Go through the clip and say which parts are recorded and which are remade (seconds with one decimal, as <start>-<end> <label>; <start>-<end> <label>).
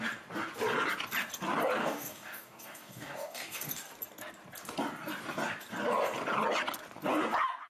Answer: 0.0-1.8 recorded; 1.8-3.7 remade; 3.7-7.7 recorded